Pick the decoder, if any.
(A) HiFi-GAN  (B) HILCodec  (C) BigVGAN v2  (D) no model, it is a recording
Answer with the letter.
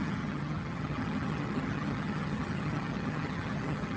A